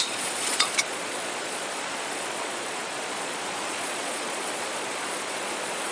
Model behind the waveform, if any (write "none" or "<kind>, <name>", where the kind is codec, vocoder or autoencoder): vocoder, Vocos